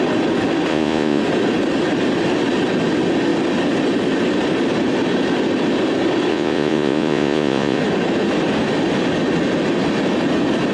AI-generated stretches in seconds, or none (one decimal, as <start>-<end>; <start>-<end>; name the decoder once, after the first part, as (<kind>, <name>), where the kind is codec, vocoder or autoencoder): 0.7-1.2 (vocoder, Vocos); 6.3-7.8